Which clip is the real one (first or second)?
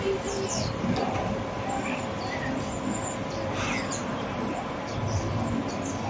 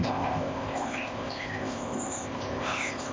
first